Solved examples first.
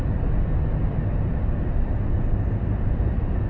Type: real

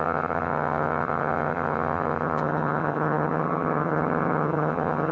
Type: fake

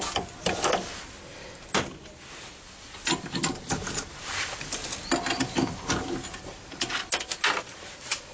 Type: real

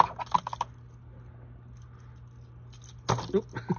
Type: real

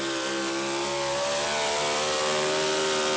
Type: real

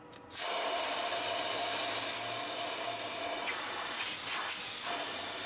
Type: real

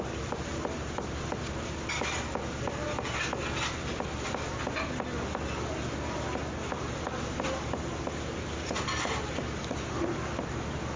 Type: real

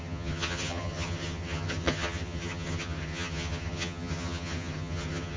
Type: fake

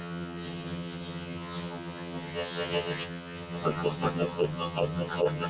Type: fake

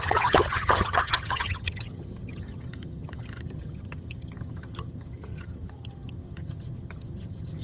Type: fake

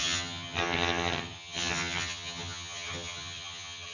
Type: fake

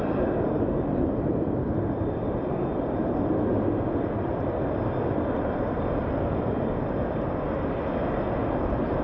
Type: real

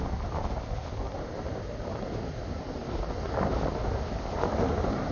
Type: real